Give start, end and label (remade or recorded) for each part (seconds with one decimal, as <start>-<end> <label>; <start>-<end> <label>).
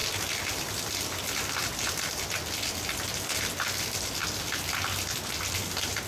0.0-6.1 recorded